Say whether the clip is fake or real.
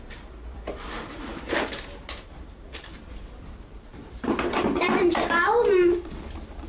fake